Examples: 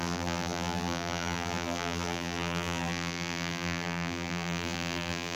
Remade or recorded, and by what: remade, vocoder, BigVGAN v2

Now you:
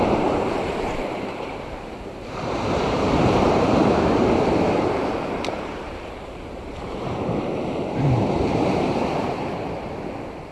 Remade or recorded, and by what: remade, vocoder, BigVGAN v2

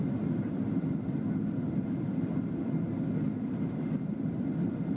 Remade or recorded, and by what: remade, vocoder, BigVGAN v2